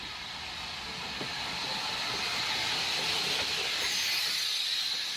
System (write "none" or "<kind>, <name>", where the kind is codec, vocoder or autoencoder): none